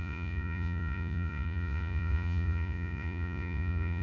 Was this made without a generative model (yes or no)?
no